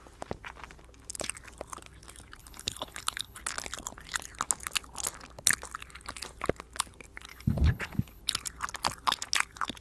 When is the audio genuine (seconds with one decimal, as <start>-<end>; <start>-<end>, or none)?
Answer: 0.0-2.4; 3.4-7.3; 8.2-9.8

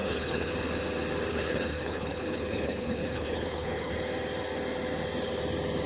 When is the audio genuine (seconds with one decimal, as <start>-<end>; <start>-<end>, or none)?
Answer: 0.5-1.3; 3.9-5.9

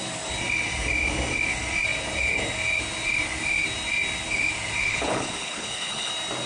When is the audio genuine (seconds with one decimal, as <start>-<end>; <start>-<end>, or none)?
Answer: 0.0-4.8; 6.1-6.5

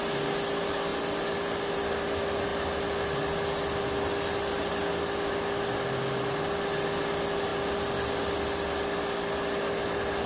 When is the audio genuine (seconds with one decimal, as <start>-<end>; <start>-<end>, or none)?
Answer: 0.0-10.3